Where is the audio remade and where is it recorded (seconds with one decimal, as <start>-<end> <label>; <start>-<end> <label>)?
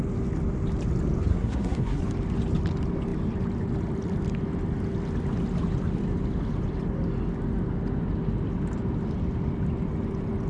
0.0-1.3 recorded; 1.3-2.0 remade; 2.0-10.5 recorded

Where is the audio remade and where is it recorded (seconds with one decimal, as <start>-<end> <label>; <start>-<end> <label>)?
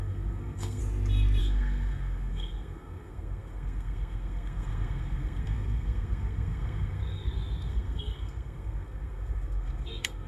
0.0-0.8 remade; 0.8-1.4 recorded; 1.4-10.3 remade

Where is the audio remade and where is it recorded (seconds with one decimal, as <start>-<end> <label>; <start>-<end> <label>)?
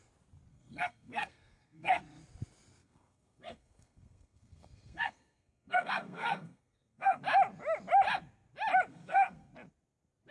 0.0-0.5 recorded; 0.5-2.0 remade; 2.0-2.8 recorded; 2.8-7.2 remade; 7.2-8.9 recorded; 8.9-9.5 remade; 9.5-10.3 recorded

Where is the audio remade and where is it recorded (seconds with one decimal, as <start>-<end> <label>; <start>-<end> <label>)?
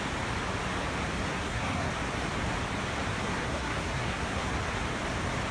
0.0-1.3 recorded; 1.3-1.9 remade; 1.9-3.2 recorded; 3.2-4.5 remade; 4.5-5.5 recorded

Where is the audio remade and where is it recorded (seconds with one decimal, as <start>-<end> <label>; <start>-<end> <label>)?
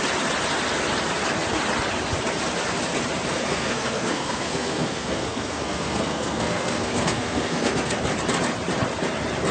0.0-3.5 recorded; 3.5-8.0 remade; 8.0-9.5 recorded